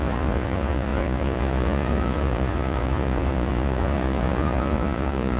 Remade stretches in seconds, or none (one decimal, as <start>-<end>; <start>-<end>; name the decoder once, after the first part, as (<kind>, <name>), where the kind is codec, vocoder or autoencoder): 0.0-5.4 (vocoder, Vocos)